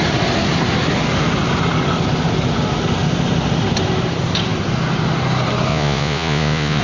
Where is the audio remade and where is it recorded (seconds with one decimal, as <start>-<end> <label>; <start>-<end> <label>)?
0.0-5.7 recorded; 5.7-6.8 remade